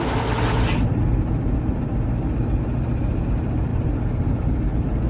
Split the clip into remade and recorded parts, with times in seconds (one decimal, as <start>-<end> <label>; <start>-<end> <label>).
0.0-5.1 recorded